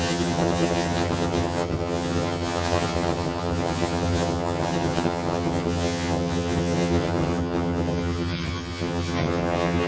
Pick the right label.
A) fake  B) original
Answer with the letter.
A